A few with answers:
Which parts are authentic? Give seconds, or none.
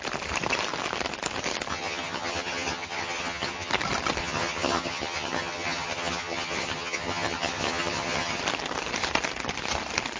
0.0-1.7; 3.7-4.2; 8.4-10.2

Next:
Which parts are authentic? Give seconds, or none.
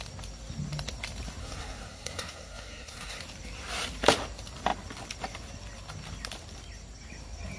0.0-1.4; 3.2-7.6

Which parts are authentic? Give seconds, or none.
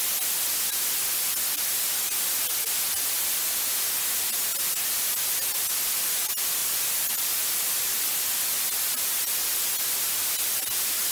0.0-11.1